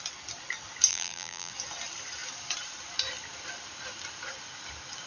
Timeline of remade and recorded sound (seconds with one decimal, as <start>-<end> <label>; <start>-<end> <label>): 0.0-0.9 recorded; 0.9-1.5 remade; 1.5-5.1 recorded